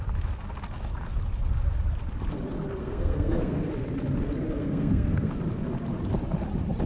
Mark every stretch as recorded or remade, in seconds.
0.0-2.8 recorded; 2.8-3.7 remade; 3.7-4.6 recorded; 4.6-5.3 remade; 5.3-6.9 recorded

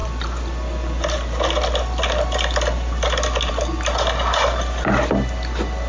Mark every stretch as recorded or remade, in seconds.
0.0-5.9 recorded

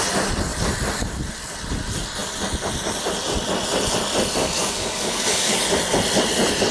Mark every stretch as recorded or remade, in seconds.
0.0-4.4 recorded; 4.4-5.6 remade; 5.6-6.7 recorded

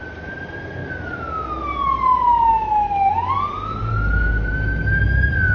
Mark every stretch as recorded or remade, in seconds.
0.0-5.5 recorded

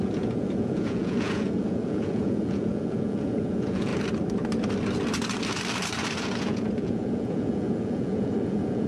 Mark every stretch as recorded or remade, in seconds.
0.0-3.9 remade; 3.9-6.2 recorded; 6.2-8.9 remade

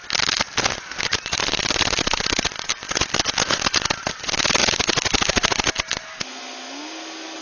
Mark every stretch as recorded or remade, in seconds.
0.0-7.4 recorded

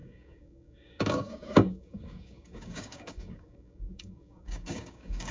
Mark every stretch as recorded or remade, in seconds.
0.0-5.3 remade